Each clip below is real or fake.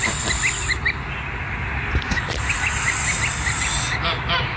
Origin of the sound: real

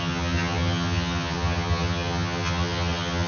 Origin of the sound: fake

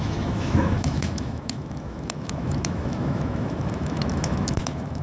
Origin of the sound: fake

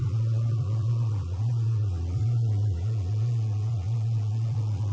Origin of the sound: fake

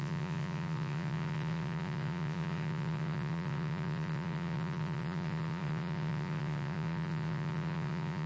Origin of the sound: fake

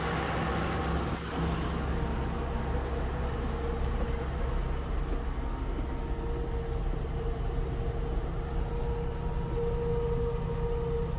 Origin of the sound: real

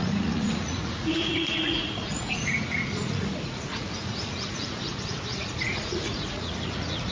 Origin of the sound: fake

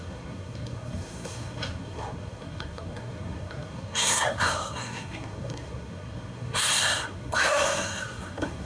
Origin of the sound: fake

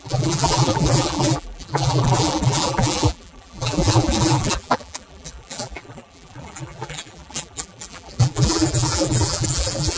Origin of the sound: fake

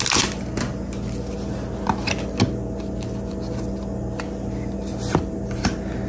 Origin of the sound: real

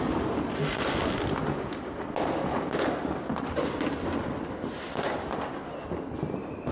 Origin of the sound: real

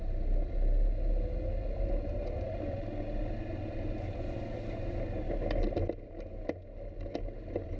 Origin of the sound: real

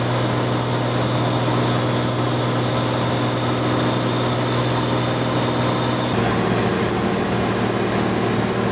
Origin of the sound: real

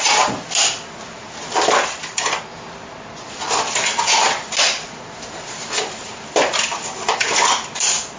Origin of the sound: real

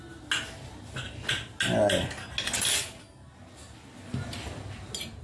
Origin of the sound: real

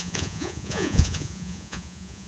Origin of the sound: fake